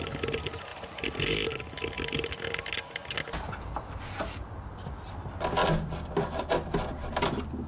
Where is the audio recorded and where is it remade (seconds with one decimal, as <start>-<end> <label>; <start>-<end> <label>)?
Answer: 0.0-0.7 recorded; 0.7-1.3 remade; 1.3-5.6 recorded; 5.6-7.1 remade; 7.1-7.7 recorded